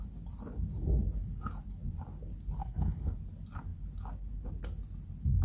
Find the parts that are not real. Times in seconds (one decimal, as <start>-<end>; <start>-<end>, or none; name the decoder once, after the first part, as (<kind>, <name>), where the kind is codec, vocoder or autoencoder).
2.6-3.1 (codec, SNAC)

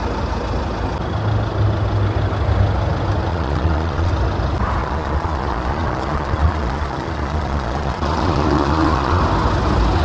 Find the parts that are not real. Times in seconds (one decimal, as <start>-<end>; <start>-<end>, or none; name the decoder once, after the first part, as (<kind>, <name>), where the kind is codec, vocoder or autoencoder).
3.3-4.1 (vocoder, Vocos); 4.8-9.2